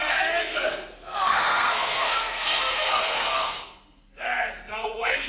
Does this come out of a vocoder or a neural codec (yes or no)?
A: yes